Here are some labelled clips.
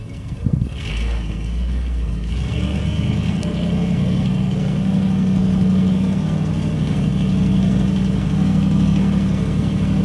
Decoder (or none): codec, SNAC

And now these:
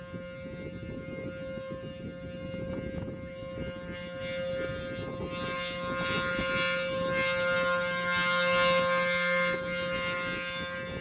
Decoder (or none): none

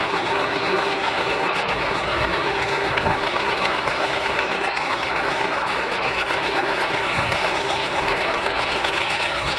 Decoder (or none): codec, SNAC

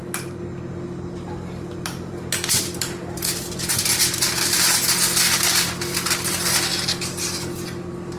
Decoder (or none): none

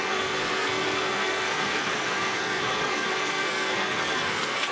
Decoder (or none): codec, SNAC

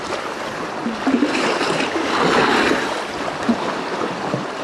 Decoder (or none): none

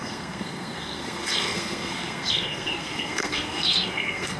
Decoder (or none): codec, SNAC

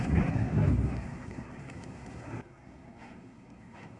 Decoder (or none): codec, SNAC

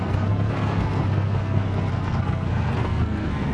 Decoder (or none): codec, SNAC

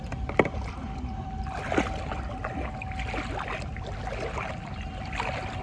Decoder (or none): none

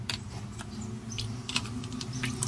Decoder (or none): none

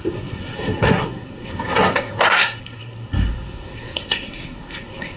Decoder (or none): codec, SNAC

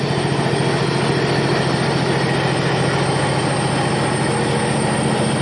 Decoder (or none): none